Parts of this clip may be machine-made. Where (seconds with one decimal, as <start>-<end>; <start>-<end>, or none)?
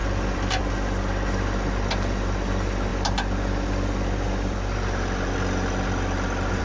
0.0-0.6